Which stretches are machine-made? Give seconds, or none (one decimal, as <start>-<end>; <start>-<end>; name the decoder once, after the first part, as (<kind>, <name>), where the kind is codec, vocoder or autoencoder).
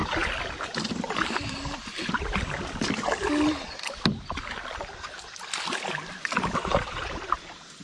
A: 0.9-1.8 (vocoder, BigVGAN v2); 6.5-7.8